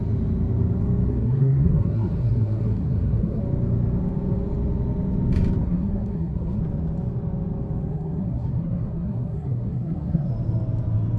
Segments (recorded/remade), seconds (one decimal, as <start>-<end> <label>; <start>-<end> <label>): 0.0-1.1 recorded; 1.1-3.4 remade; 3.4-5.6 recorded; 5.6-6.6 remade; 6.6-7.9 recorded; 7.9-10.3 remade; 10.3-11.2 recorded